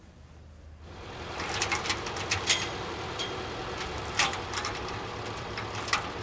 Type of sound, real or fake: fake